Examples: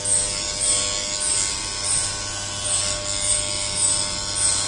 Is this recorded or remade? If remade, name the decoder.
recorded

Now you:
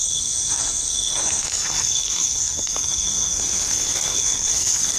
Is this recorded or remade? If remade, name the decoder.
remade, codec, SNAC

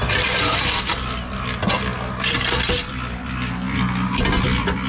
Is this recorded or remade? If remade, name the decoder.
recorded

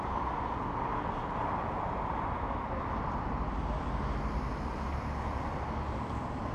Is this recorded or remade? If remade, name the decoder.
recorded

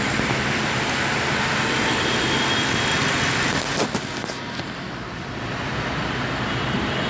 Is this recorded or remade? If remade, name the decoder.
recorded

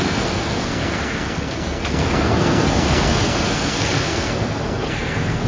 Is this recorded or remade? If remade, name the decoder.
remade, codec, SNAC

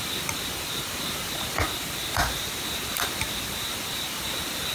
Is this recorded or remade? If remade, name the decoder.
recorded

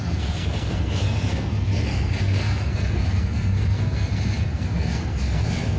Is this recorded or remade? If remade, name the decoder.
remade, codec, SNAC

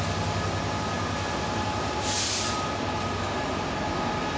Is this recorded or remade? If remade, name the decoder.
recorded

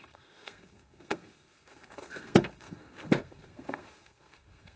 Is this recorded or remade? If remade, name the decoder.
remade, codec, SNAC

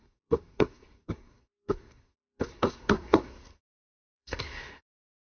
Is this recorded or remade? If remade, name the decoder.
remade, codec, SNAC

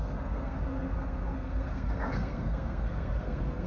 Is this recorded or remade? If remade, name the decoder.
remade, codec, SNAC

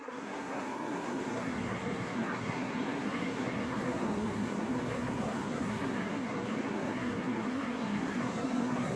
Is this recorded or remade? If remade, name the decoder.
remade, codec, SNAC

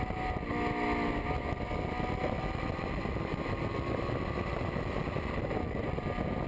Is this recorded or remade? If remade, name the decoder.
recorded